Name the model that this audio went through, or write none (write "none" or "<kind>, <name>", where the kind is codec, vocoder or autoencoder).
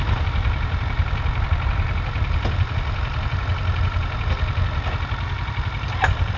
none